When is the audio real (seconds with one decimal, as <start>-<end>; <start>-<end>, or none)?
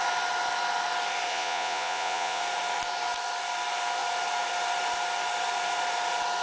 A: 0.0-1.3; 2.4-6.4